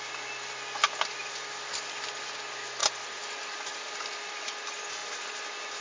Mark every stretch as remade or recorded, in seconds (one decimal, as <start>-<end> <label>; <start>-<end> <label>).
0.0-2.8 recorded; 2.8-3.9 remade; 3.9-5.8 recorded